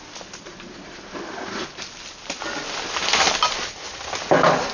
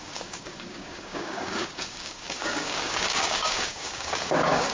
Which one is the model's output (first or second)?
second